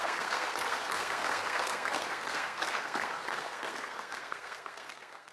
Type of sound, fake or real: fake